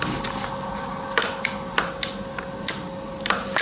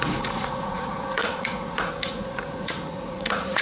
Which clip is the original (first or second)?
first